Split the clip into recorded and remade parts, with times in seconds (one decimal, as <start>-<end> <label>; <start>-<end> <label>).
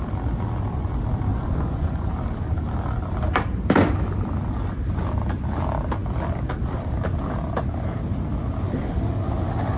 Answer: 0.0-1.3 recorded; 1.3-2.1 remade; 2.1-9.8 recorded